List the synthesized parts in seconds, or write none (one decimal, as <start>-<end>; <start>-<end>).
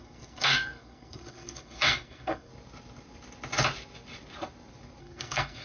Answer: 0.0-2.5; 5.0-5.6